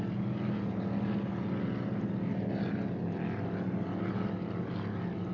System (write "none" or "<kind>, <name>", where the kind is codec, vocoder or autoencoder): none